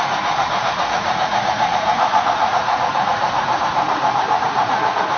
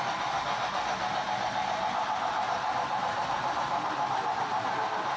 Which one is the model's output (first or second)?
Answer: first